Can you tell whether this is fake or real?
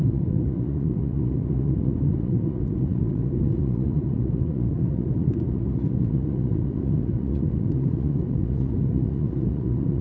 fake